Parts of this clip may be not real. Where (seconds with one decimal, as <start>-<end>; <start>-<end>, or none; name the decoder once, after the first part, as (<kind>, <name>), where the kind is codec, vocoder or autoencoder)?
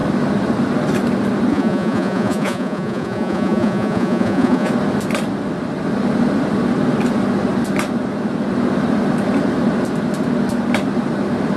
1.5-4.7 (vocoder, Vocos)